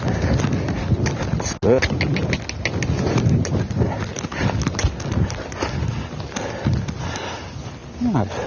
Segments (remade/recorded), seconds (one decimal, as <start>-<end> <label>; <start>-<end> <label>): 0.0-8.5 recorded